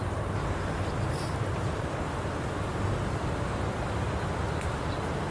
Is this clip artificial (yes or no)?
no